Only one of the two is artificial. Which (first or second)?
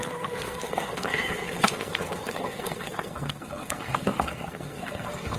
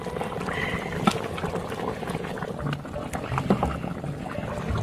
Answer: first